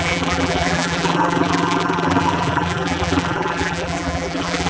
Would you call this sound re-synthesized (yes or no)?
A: yes